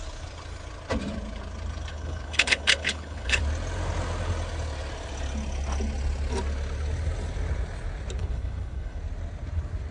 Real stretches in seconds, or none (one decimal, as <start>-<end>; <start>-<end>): 0.0-1.9; 3.4-8.2; 9.0-9.9